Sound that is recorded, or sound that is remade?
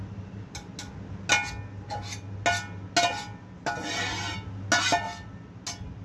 recorded